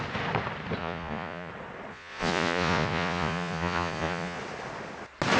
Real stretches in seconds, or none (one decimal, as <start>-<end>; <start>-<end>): 0.0-0.8; 1.5-1.9; 4.4-5.4